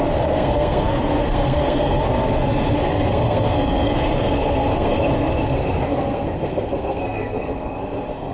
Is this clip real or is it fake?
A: fake